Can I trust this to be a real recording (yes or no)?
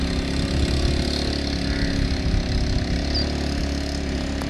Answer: yes